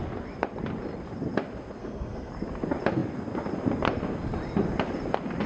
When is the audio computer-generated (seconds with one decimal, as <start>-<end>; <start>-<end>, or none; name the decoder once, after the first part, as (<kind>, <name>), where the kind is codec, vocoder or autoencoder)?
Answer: 1.8-2.3 (codec, SNAC)